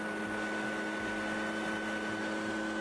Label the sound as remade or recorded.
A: recorded